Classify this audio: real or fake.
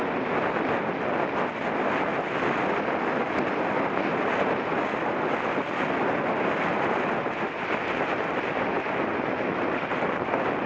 real